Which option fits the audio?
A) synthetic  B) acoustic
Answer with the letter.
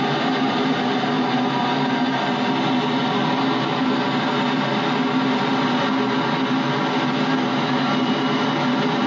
B